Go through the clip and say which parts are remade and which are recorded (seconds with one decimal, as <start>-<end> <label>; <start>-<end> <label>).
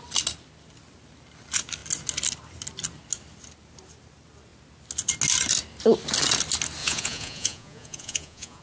0.0-6.8 recorded; 6.8-8.6 remade